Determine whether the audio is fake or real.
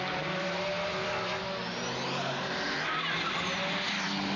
real